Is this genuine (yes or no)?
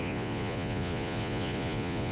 no